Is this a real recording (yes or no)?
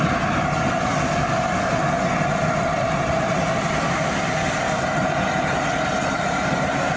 yes